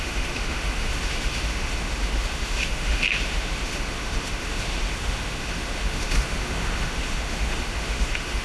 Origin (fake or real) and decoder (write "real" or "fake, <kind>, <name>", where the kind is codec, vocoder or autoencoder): fake, autoencoder, DAC-VAE